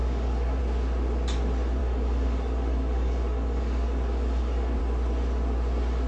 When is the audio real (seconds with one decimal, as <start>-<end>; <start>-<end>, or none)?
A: 0.6-1.8; 4.8-6.1